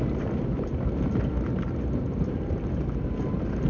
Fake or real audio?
real